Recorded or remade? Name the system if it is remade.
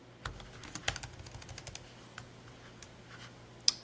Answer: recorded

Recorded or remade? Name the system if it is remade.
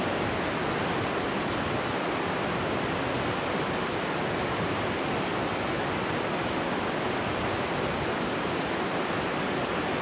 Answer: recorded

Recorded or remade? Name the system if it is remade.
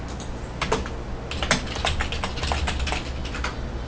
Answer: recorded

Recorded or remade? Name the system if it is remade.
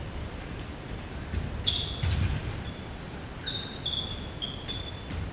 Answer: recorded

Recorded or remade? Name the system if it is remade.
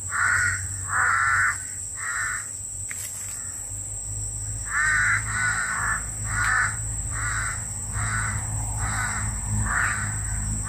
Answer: recorded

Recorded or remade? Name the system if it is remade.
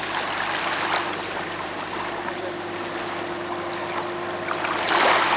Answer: recorded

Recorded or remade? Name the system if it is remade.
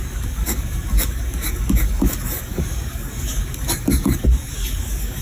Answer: remade, codec, DAC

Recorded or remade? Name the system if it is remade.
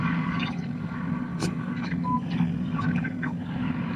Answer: remade, codec, DAC